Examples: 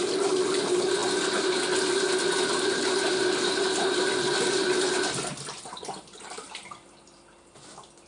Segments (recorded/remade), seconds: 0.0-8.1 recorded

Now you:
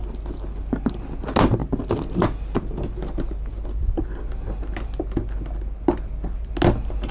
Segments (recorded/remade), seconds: 0.0-7.1 recorded

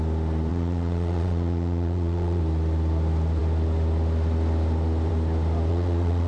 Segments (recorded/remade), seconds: 0.0-0.5 recorded; 0.5-2.4 remade; 2.4-5.7 recorded; 5.7-6.3 remade

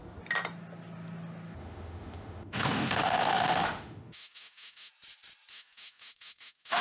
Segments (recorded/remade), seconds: 0.0-1.6 recorded; 1.6-4.9 remade; 4.9-5.5 recorded; 5.5-6.8 remade

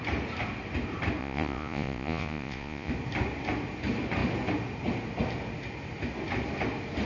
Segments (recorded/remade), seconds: 0.0-1.2 recorded; 1.2-2.9 remade; 2.9-7.1 recorded

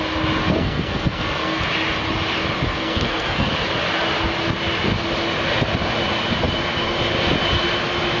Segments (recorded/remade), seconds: 0.0-0.4 recorded; 0.4-1.6 remade; 1.6-2.7 recorded; 2.7-3.5 remade; 3.5-8.2 recorded

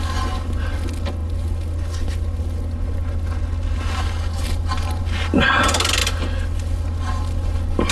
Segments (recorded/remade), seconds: 0.0-7.9 recorded